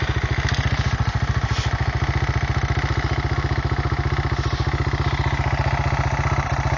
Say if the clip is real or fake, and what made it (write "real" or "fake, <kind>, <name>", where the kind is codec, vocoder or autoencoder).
real